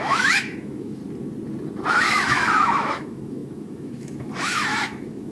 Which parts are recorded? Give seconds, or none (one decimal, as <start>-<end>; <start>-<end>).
1.0-1.9